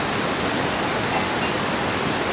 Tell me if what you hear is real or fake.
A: real